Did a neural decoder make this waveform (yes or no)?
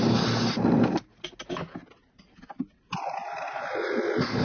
no